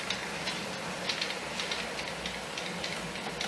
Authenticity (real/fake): real